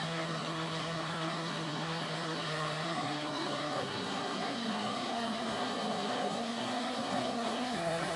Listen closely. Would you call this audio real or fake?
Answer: fake